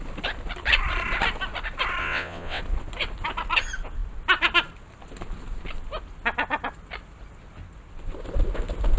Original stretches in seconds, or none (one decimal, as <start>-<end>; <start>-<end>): 0.0-2.0; 2.6-9.0